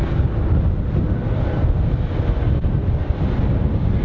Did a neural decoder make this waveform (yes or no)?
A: no